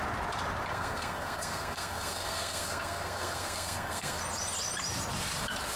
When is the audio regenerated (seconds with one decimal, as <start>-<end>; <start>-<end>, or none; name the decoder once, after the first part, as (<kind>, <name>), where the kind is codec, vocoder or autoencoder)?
0.7-4.2 (codec, SNAC)